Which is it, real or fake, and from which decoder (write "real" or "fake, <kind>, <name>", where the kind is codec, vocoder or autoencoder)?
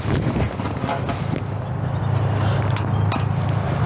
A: real